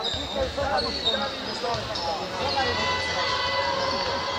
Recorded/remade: recorded